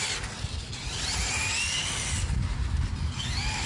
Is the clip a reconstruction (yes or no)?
no